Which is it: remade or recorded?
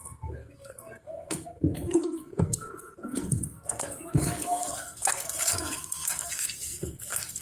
remade